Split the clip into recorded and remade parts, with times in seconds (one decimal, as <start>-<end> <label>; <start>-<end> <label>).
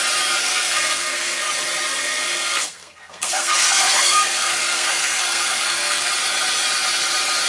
0.0-0.4 recorded; 0.4-1.5 remade; 1.5-1.9 recorded; 1.9-6.1 remade; 6.1-7.5 recorded